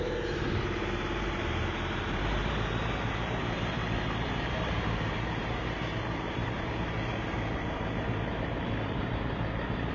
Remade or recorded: remade